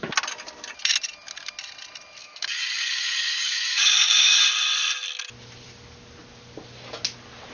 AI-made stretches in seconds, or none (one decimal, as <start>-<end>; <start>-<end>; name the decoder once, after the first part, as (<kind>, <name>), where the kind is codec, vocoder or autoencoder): 2.2-4.4 (codec, DAC)